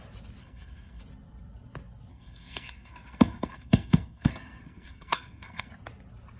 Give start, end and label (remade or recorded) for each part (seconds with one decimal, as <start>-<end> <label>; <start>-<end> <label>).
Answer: 0.0-0.4 recorded; 0.4-1.0 remade; 1.0-2.1 recorded; 2.1-5.7 remade; 5.7-6.4 recorded

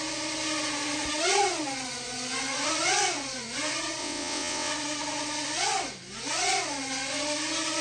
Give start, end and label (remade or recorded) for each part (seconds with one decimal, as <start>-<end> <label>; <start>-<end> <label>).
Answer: 0.0-4.0 recorded; 4.0-4.7 remade; 4.7-7.8 recorded

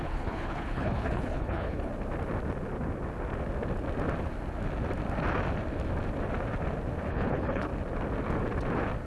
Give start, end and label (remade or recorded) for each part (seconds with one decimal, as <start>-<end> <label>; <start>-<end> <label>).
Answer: 0.0-1.9 remade; 1.9-7.1 recorded; 7.1-7.7 remade; 7.7-9.1 recorded

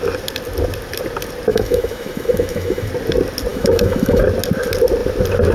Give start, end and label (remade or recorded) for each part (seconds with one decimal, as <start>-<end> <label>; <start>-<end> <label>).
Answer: 0.0-1.5 recorded; 1.5-2.9 remade; 2.9-3.5 recorded; 3.5-4.2 remade; 4.2-5.5 recorded

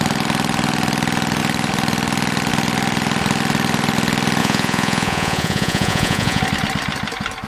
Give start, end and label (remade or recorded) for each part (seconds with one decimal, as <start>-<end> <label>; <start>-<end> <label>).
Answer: 0.0-4.4 recorded; 4.4-6.4 remade; 6.4-7.5 recorded

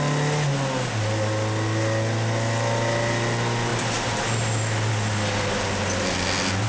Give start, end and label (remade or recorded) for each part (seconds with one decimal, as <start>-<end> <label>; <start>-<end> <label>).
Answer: 0.0-6.7 recorded

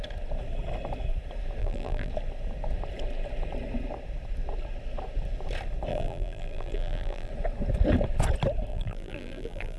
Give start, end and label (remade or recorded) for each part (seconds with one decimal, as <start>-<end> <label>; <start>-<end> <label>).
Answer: 0.0-1.6 recorded; 1.6-2.1 remade; 2.1-5.9 recorded; 5.9-7.3 remade; 7.3-8.7 recorded; 8.7-9.8 remade

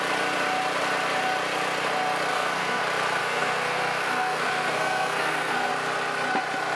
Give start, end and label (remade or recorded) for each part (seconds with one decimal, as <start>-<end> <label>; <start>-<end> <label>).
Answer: 0.0-2.3 recorded; 2.3-2.8 remade; 2.8-3.2 recorded; 3.2-5.7 remade; 5.7-6.8 recorded